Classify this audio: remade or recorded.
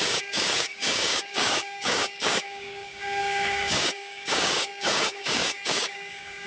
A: remade